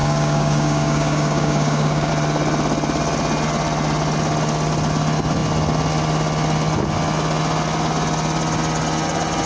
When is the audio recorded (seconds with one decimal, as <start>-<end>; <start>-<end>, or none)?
2.1-9.5